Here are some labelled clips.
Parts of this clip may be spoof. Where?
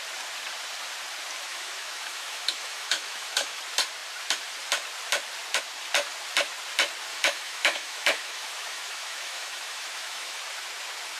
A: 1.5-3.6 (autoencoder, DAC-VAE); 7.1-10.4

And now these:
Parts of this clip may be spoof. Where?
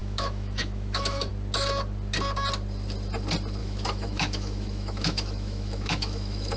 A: 0.0-1.3 (autoencoder, DAC-VAE); 3.6-6.6